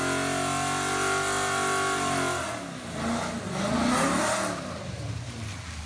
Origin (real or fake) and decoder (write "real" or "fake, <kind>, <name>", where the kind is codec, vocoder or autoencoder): real